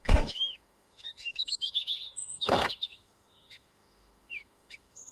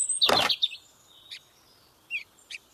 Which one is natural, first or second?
second